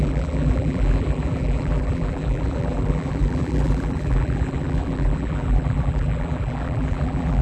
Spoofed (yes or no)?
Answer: yes